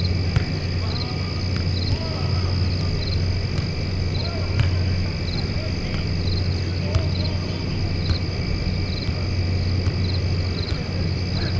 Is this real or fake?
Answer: real